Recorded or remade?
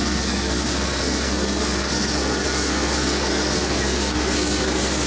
remade